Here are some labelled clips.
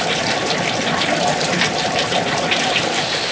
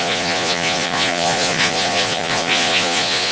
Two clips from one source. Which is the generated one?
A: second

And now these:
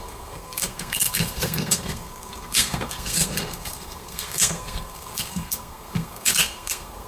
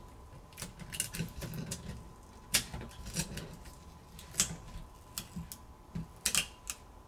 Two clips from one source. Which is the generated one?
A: first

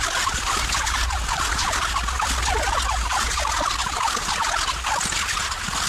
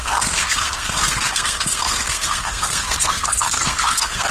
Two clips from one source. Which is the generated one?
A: second